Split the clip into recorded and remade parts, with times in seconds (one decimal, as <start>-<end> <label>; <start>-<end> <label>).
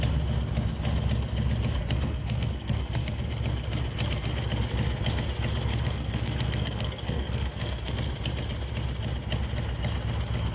0.0-1.8 recorded; 1.8-3.3 remade; 3.3-5.7 recorded; 5.7-7.9 remade; 7.9-10.5 recorded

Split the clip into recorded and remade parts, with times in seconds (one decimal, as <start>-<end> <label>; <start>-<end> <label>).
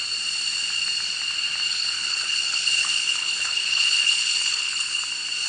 0.0-1.7 recorded; 1.7-5.0 remade; 5.0-5.5 recorded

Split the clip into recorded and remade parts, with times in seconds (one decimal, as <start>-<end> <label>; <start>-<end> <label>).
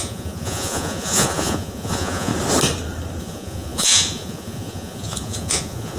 0.0-2.3 remade; 2.3-3.2 recorded; 3.2-6.0 remade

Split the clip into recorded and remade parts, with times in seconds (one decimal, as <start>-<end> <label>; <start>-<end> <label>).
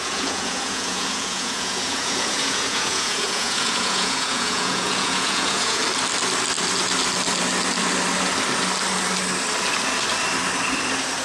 0.0-5.8 remade; 5.8-11.2 recorded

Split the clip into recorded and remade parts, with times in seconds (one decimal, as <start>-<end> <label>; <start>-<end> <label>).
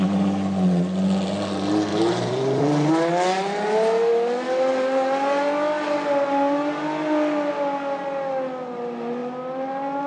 0.0-1.9 recorded; 1.9-2.9 remade; 2.9-10.1 recorded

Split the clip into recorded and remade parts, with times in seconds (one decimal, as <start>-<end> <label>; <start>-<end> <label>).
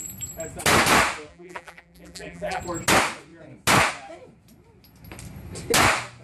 0.0-1.3 recorded; 1.3-2.6 remade; 2.6-6.2 recorded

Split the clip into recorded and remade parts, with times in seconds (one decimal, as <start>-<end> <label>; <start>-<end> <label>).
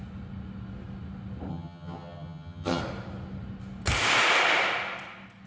0.0-1.5 recorded; 1.5-2.8 remade; 2.8-5.5 recorded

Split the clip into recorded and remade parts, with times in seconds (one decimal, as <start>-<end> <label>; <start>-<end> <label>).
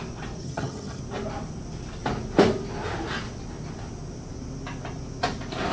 0.0-0.4 recorded; 0.4-1.0 remade; 1.0-5.7 recorded